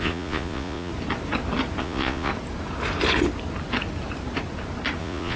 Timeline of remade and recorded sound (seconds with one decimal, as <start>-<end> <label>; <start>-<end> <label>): 0.0-0.9 remade; 0.9-1.8 recorded; 1.8-2.3 remade; 2.3-5.0 recorded; 5.0-5.4 remade